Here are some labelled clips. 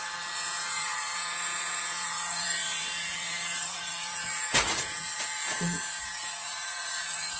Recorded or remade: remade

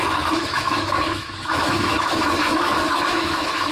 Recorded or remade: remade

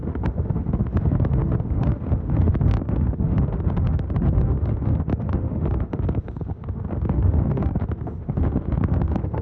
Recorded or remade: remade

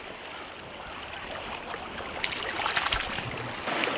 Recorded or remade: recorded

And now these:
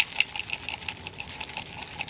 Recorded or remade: recorded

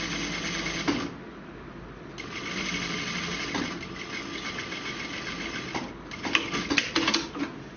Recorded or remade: recorded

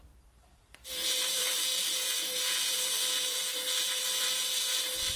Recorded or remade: remade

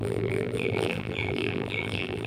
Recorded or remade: remade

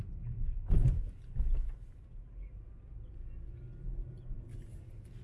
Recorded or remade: recorded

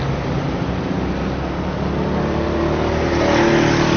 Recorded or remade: recorded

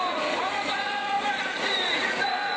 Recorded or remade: remade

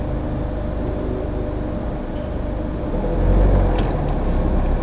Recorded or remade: recorded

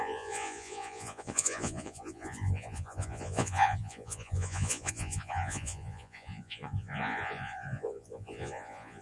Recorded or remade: remade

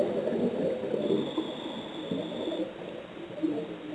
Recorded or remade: recorded